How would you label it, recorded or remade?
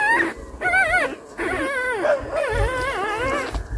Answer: recorded